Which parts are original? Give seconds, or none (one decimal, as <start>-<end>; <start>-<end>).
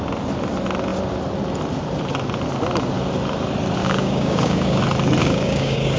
0.0-3.8; 4.8-5.2